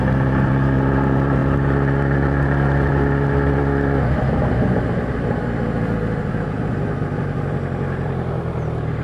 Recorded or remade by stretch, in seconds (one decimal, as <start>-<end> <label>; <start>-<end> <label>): 0.0-9.0 recorded